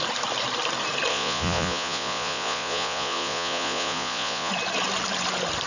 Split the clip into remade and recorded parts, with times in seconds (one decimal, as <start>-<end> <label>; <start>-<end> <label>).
0.0-1.1 recorded; 1.1-4.5 remade; 4.5-5.7 recorded

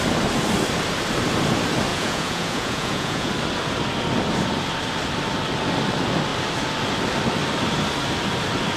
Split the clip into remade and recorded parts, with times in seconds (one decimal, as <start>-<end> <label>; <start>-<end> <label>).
0.0-1.9 recorded; 1.9-3.3 remade; 3.3-8.8 recorded

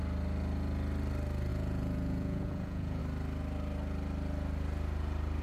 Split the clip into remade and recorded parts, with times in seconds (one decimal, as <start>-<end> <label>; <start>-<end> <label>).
0.0-1.5 recorded; 1.5-3.0 remade; 3.0-5.4 recorded

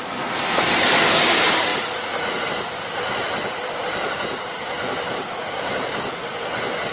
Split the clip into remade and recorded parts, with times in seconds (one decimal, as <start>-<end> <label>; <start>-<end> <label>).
0.0-6.9 recorded

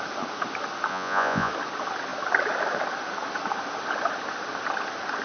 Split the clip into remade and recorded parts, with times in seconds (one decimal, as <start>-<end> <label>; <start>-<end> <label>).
0.0-0.9 recorded; 0.9-1.5 remade; 1.5-5.2 recorded

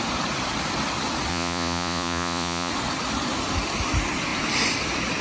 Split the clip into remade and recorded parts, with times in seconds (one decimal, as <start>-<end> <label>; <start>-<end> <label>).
0.0-1.3 recorded; 1.3-2.7 remade; 2.7-5.2 recorded

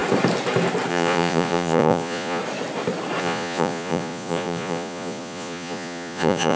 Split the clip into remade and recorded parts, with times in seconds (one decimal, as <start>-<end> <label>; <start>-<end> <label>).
0.0-0.9 recorded; 0.9-2.4 remade; 2.4-3.2 recorded; 3.2-6.6 remade